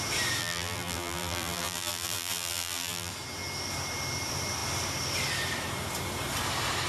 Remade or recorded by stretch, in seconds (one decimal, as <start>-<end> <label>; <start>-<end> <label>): 0.0-0.4 recorded; 0.4-3.1 remade; 3.1-6.9 recorded